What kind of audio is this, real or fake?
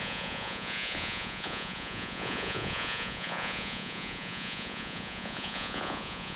fake